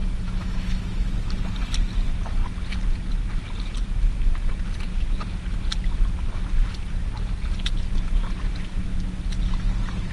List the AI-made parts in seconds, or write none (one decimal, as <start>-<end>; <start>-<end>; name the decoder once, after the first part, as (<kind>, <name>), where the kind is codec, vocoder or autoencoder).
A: 0.0-1.1 (autoencoder, DAC-VAE)